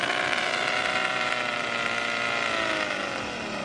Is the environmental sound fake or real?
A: real